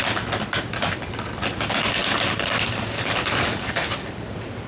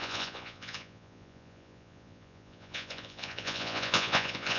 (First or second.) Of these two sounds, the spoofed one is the second